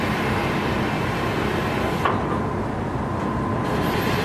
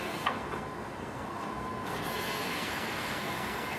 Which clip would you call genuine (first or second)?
first